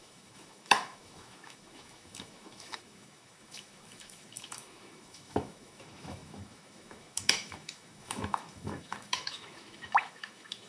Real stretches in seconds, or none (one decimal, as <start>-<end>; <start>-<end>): none